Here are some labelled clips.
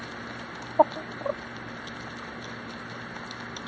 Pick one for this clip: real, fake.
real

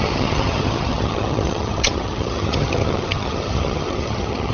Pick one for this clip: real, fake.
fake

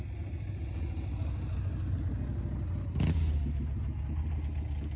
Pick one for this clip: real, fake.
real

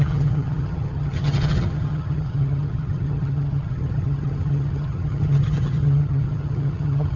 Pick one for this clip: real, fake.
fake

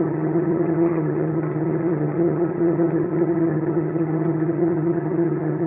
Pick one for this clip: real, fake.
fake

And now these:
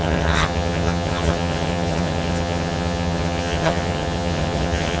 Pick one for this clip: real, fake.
fake